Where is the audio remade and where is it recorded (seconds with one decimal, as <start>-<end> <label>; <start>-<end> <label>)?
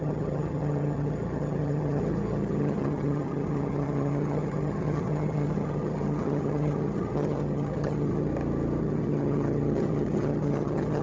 0.0-8.3 remade; 8.3-8.8 recorded; 8.8-11.0 remade